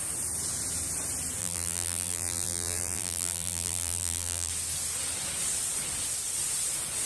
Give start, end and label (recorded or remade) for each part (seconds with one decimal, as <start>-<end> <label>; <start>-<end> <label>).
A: 0.0-1.4 recorded; 1.4-4.5 remade; 4.5-7.1 recorded